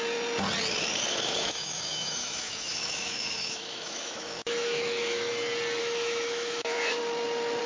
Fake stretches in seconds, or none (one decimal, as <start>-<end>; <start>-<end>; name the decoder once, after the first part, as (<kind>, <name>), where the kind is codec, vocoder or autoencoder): 1.1-5.3 (autoencoder, DAC-VAE); 5.8-7.0